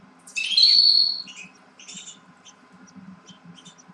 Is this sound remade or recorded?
recorded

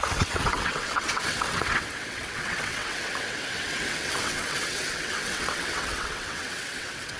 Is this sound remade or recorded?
remade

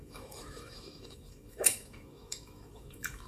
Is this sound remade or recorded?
remade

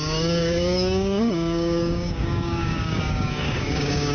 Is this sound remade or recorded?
remade